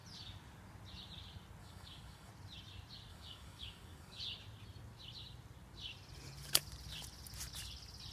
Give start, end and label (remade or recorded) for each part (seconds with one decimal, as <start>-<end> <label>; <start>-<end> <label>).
0.0-1.6 recorded; 1.6-2.3 remade; 2.3-3.1 recorded; 3.1-4.2 remade; 4.2-8.1 recorded